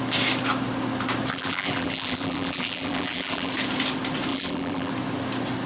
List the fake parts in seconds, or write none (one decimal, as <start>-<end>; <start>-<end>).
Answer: 1.3-3.5; 4.3-4.9

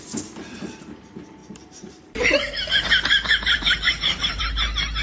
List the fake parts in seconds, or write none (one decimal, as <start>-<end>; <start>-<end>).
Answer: 1.4-4.4